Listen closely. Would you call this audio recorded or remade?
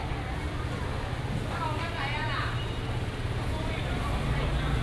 recorded